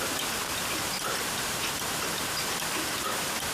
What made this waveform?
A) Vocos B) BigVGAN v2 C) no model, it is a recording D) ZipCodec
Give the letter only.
C